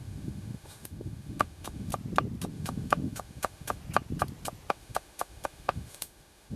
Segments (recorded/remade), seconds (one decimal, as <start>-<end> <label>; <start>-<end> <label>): 0.0-1.9 remade; 1.9-2.5 recorded; 2.5-3.8 remade; 3.8-4.7 recorded; 4.7-6.6 remade